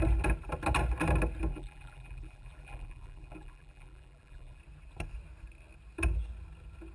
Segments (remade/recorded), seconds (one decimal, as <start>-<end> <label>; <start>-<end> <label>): 0.0-1.5 recorded; 1.5-4.6 remade; 4.6-6.9 recorded